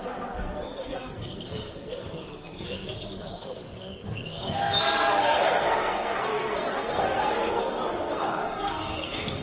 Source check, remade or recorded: remade